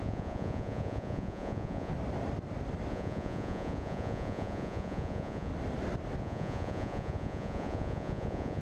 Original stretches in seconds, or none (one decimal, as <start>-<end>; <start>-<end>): 1.9-2.9; 5.5-6.2